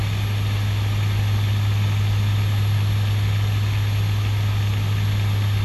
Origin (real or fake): real